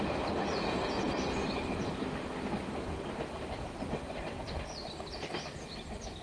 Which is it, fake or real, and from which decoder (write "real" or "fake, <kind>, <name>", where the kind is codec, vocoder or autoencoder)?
real